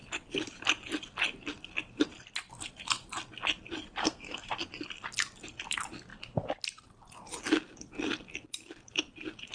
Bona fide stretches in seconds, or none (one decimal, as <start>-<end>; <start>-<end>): 0.0-4.0; 4.5-9.5